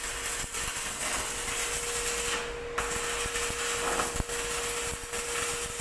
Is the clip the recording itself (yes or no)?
yes